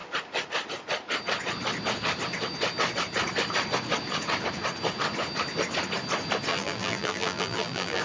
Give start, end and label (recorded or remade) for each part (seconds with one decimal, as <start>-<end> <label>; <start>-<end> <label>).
0.0-6.5 recorded; 6.5-8.0 remade